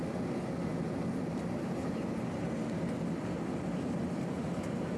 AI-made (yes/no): no